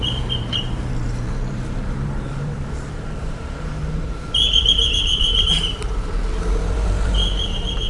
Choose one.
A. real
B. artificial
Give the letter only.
B